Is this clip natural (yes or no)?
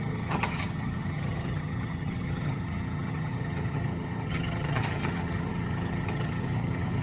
no